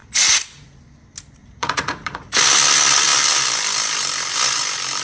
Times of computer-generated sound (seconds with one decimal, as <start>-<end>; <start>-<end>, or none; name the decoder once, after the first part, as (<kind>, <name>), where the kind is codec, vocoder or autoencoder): 0.0-0.8 (vocoder, Vocos); 1.4-2.4